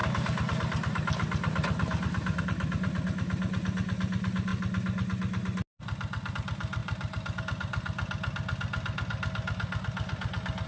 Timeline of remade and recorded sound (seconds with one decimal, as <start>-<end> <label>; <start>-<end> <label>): 0.0-10.7 recorded

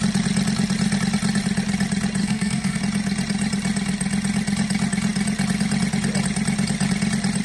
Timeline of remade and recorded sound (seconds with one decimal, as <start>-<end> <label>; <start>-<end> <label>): 0.0-2.2 recorded; 2.2-2.8 remade; 2.8-7.4 recorded

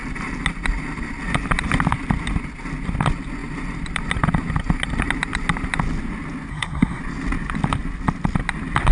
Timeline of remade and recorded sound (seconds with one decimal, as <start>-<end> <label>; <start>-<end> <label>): 0.0-6.5 recorded; 6.5-7.0 remade; 7.0-8.9 recorded

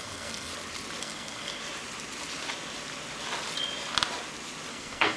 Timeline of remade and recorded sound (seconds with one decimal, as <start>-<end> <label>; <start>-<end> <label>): 0.0-0.5 remade; 0.5-1.0 recorded; 1.0-1.6 remade; 1.6-4.7 recorded; 4.7-5.2 remade

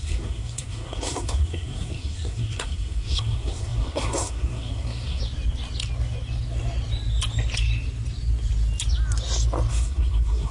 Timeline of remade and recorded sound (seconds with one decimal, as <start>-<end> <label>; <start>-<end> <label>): 0.0-5.2 remade; 5.2-9.7 recorded; 9.7-10.5 remade

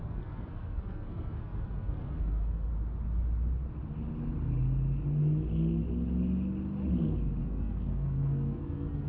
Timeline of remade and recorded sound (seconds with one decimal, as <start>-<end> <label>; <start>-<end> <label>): 0.0-2.7 remade; 2.7-7.4 recorded; 7.4-9.1 remade